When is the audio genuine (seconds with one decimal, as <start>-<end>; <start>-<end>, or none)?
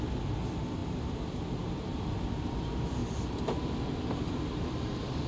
0.0-0.8; 2.3-5.3